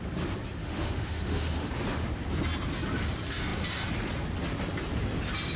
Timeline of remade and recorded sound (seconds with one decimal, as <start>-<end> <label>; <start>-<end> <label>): 0.0-0.6 recorded; 0.6-1.7 remade; 1.7-5.6 recorded